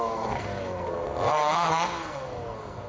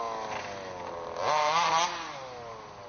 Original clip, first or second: second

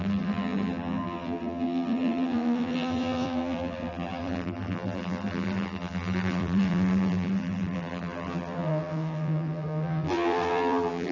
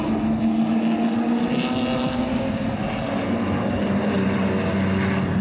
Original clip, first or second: second